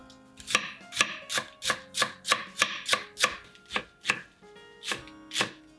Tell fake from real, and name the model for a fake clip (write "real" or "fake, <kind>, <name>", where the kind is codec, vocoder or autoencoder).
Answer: real